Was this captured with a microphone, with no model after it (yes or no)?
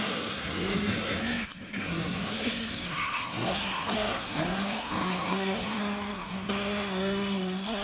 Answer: no